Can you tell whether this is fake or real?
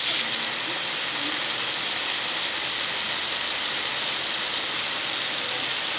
real